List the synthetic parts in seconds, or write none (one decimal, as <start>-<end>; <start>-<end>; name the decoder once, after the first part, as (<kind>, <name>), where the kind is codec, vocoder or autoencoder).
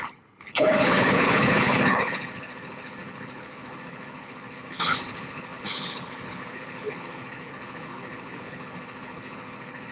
0.0-9.9 (codec, HILCodec)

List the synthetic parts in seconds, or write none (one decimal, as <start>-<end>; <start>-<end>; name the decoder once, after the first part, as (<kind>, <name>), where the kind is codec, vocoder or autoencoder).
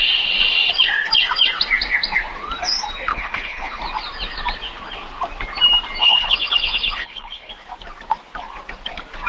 3.1-3.8 (codec, HILCodec); 6.0-7.5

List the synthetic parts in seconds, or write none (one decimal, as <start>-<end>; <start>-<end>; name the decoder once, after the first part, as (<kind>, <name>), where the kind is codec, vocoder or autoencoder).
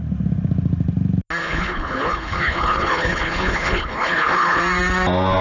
1.4-4.6 (codec, HILCodec)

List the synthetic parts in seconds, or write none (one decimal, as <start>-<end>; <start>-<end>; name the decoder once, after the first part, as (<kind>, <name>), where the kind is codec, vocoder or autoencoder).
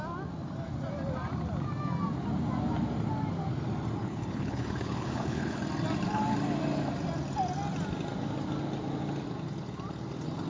4.0-5.6 (codec, HILCodec)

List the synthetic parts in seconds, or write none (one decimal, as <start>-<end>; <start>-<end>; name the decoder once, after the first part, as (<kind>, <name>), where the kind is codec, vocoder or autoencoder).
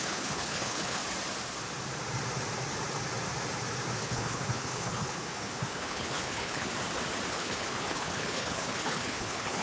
0.0-1.0 (codec, HILCodec); 4.0-6.7; 7.3-9.6